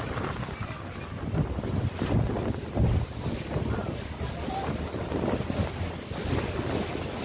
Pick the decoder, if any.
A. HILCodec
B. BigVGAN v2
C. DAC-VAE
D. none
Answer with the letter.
D